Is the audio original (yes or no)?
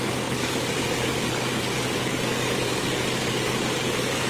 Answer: no